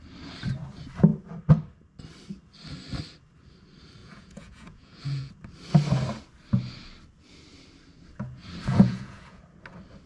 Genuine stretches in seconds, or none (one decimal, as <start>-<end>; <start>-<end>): 0.0-4.0; 5.3-8.7; 9.4-10.1